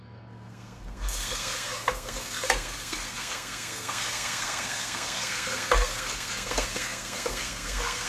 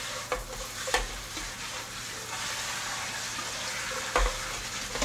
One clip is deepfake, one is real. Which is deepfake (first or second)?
first